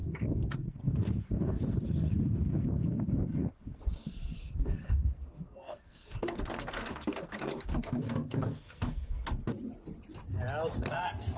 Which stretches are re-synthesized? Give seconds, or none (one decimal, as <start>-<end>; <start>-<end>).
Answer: 0.0-9.4; 10.8-11.4

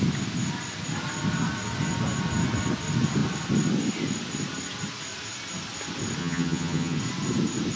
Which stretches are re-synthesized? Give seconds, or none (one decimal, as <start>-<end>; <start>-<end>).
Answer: 6.2-7.0

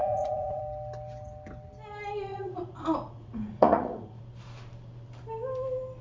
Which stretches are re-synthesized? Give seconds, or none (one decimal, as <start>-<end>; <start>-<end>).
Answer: 0.0-0.6; 2.3-4.2

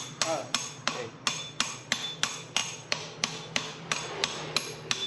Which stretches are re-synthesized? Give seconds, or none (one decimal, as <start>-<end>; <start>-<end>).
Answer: 0.4-1.1; 2.6-4.1

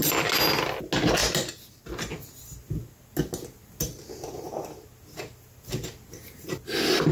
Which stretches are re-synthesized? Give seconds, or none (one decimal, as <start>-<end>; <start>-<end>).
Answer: none

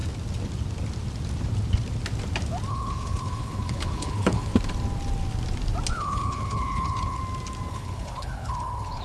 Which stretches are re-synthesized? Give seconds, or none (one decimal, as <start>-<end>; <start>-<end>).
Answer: 2.7-4.5; 5.9-7.2; 7.7-9.0

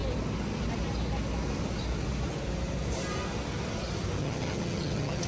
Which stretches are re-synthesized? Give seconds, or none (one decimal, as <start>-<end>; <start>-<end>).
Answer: 4.2-5.3